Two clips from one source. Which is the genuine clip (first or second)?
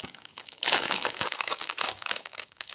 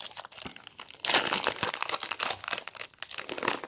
second